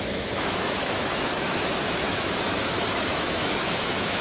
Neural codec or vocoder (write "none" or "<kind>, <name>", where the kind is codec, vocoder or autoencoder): autoencoder, DAC-VAE